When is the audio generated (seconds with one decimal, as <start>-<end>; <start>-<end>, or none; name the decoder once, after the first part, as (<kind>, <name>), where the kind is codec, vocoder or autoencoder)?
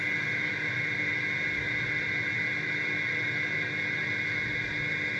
none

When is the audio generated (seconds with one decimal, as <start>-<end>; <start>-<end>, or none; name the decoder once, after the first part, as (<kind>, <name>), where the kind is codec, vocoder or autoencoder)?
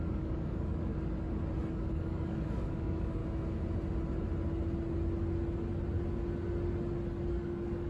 0.0-0.9 (codec, DAC); 1.7-3.2; 7.3-7.9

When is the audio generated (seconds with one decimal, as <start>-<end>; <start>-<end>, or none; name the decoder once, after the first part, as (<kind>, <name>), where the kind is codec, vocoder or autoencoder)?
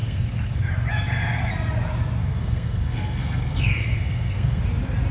0.0-0.6 (codec, SNAC); 2.2-4.6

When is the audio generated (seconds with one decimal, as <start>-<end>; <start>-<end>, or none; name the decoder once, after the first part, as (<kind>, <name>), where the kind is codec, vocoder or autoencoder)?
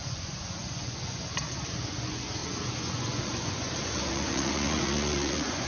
0.0-5.7 (vocoder, Vocos)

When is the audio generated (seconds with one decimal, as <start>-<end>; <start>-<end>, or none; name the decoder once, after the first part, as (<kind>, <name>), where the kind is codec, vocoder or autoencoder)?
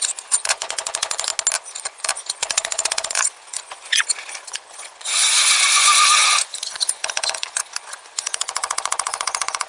0.0-1.3 (vocoder, Vocos); 1.8-9.7